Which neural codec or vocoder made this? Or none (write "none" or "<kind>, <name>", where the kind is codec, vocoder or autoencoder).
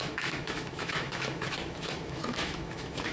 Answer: autoencoder, DAC-VAE